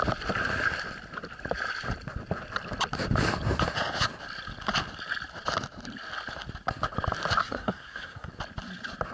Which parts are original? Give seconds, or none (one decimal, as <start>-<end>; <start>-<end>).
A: 0.0-7.4; 8.3-9.1